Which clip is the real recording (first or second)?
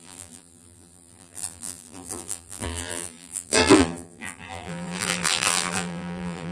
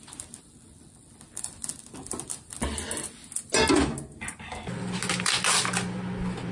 second